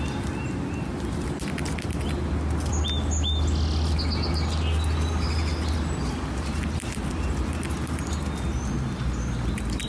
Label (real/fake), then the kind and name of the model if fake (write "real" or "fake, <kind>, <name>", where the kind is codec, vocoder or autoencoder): real